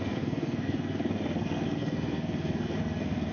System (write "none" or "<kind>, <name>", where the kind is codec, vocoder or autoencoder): codec, SNAC